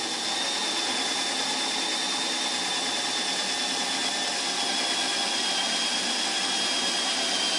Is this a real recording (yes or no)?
yes